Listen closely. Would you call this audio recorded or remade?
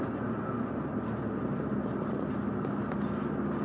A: recorded